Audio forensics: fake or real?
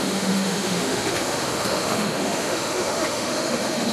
fake